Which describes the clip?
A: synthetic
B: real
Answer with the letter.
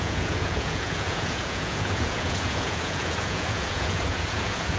A